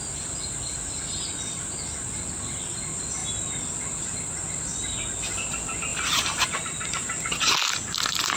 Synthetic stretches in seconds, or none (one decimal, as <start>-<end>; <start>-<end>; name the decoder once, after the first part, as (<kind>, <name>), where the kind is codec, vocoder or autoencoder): 5.9-7.5 (vocoder, BigVGAN v2)